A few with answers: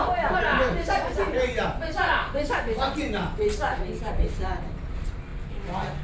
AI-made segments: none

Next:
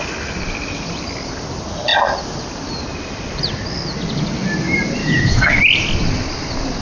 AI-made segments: 5.0-5.6 (autoencoder, DAC-VAE)

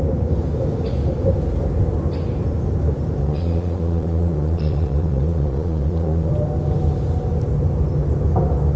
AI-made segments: 3.2-6.3 (vocoder, Vocos)

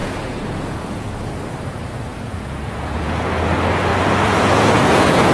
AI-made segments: 0.0-1.1 (vocoder, Vocos); 2.1-3.3; 3.9-5.3

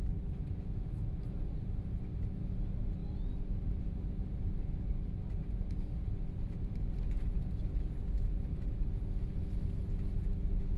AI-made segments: 0.4-1.6 (vocoder, BigVGAN v2); 3.0-6.7